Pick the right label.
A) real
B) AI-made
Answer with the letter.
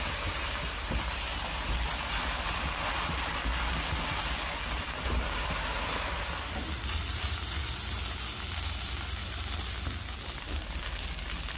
A